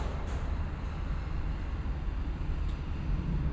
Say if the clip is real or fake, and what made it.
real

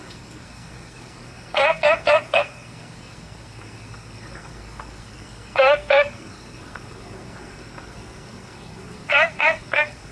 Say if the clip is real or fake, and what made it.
fake, codec, SNAC